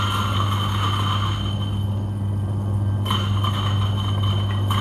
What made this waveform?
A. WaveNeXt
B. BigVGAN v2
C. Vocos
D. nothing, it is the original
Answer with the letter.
D